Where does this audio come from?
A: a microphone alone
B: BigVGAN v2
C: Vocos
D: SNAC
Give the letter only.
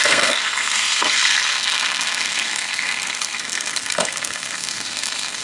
D